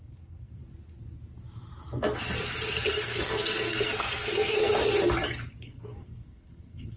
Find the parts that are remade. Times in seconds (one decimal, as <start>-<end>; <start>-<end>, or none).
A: 0.0-0.6; 2.9-4.8; 5.6-7.0

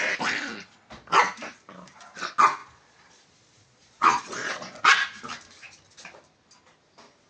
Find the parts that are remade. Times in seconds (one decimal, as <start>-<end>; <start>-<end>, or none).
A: 2.6-4.9

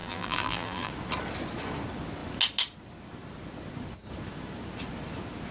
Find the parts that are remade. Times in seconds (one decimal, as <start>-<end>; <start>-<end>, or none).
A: 0.0-0.9

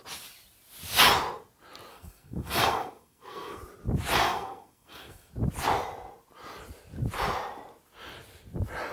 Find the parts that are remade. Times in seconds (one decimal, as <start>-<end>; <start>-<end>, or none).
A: 1.9-3.6; 4.2-5.3

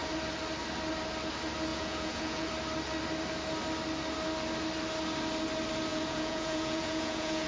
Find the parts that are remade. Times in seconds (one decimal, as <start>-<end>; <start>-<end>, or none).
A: 1.7-2.5; 5.9-7.5

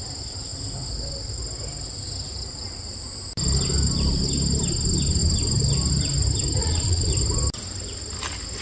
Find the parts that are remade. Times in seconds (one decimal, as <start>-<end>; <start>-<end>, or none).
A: 6.6-7.1

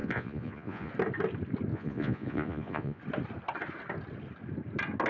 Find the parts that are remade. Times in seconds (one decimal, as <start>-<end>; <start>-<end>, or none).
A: 0.0-0.9; 1.7-3.0